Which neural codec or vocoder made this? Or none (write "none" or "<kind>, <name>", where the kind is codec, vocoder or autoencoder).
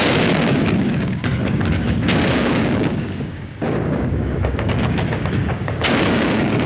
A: codec, DAC